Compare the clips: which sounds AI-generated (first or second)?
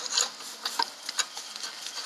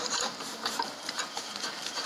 second